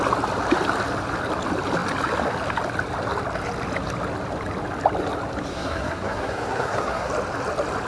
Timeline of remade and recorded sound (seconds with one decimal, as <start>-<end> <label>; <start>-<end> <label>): 0.0-5.5 recorded; 5.5-7.1 remade; 7.1-7.9 recorded